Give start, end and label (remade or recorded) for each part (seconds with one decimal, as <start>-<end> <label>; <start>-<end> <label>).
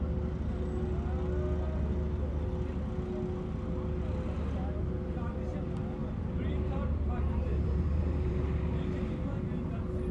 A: 0.0-6.0 recorded; 6.0-8.6 remade; 8.6-10.1 recorded